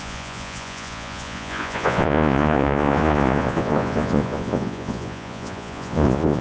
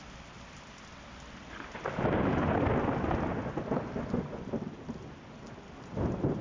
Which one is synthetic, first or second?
first